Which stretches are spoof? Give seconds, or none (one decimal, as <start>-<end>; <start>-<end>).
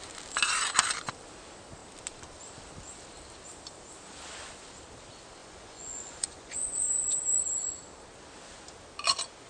5.4-6.9